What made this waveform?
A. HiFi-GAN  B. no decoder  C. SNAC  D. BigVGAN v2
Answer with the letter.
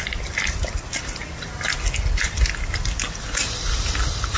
B